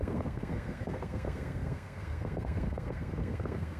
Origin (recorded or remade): remade